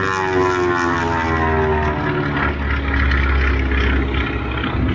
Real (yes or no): yes